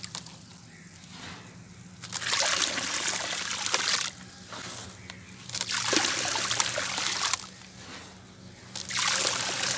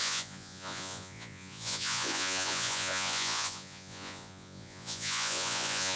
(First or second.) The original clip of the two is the first